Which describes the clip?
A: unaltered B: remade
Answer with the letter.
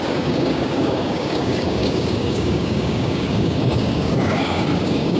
B